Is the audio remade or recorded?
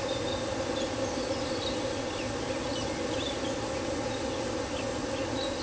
recorded